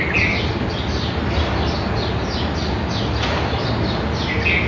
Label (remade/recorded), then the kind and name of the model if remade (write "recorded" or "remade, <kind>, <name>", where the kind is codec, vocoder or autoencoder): recorded